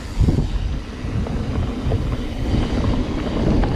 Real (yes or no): yes